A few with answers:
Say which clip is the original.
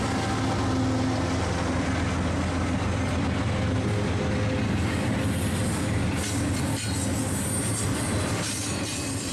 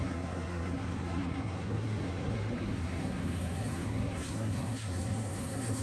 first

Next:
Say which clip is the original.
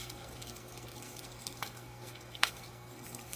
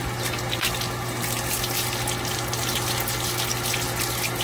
second